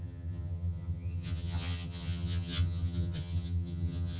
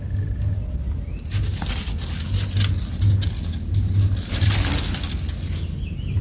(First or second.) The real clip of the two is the second